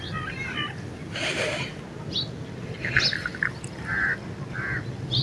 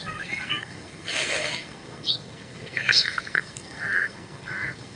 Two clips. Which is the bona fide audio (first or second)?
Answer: first